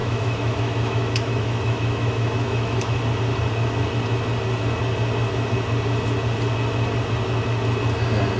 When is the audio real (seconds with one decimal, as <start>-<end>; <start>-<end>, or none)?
3.0-8.4